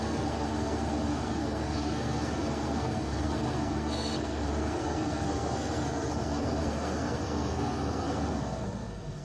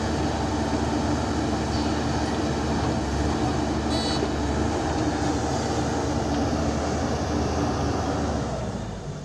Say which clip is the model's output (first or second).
first